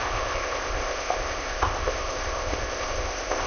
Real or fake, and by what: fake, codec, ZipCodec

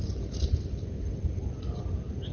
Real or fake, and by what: real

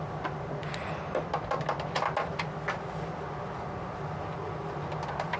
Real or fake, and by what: real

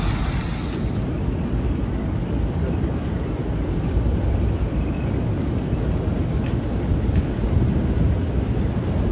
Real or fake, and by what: real